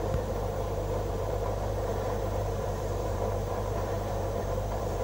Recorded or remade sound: remade